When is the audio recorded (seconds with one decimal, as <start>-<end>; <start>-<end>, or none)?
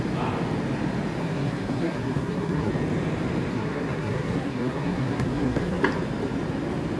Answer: 0.0-1.2; 2.7-3.5; 5.8-7.0